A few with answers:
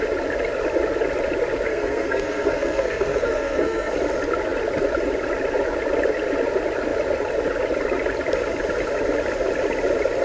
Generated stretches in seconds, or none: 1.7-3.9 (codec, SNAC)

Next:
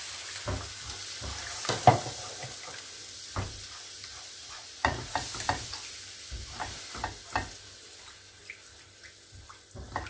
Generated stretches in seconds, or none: 4.4-5.1 (vocoder, Vocos)

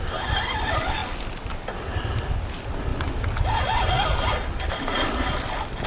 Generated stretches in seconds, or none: none

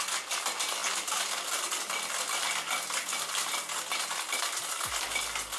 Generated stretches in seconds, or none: none

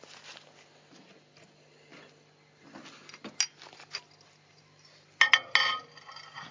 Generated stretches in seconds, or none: none

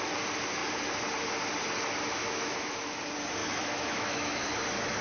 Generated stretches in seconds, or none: 2.2-3.0 (autoencoder, DAC-VAE); 3.4-4.6

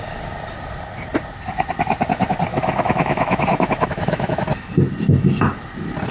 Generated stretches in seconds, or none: 2.5-4.4 (autoencoder, DAC-VAE)